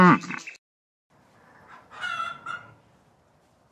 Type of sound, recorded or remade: recorded